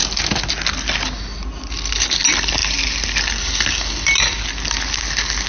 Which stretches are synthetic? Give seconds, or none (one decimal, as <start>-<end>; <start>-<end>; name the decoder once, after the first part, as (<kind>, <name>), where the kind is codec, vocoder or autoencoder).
none